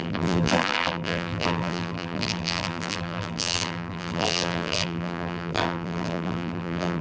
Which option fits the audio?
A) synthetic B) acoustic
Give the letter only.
A